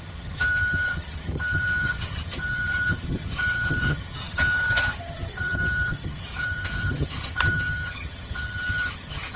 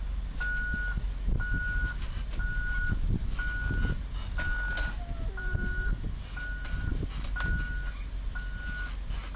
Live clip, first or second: second